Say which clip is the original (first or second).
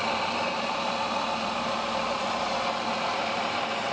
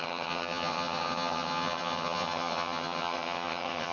first